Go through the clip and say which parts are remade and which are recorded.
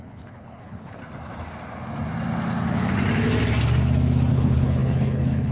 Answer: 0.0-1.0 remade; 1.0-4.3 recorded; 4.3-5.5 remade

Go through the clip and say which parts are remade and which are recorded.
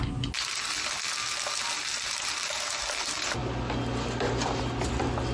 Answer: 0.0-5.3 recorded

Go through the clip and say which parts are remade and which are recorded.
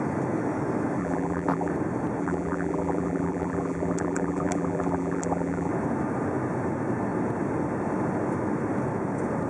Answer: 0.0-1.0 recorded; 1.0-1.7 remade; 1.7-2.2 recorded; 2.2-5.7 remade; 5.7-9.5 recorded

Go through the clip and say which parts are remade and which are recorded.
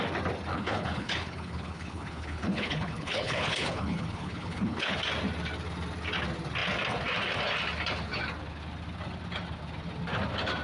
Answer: 0.0-0.5 recorded; 0.5-5.0 remade; 5.0-10.6 recorded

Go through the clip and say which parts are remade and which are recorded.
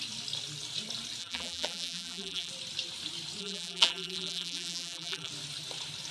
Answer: 0.0-1.2 recorded; 1.2-2.5 remade; 2.5-3.4 recorded; 3.4-5.3 remade; 5.3-6.1 recorded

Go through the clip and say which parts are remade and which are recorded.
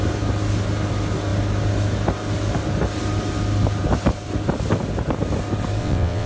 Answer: 0.0-5.8 recorded; 5.8-6.3 remade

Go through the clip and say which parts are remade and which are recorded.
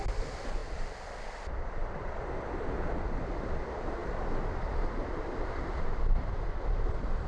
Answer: 0.0-7.3 recorded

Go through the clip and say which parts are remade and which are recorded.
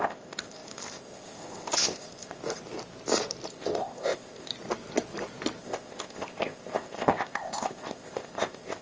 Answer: 0.0-2.4 remade; 2.4-3.5 recorded; 3.5-4.5 remade; 4.5-5.6 recorded; 5.6-8.8 remade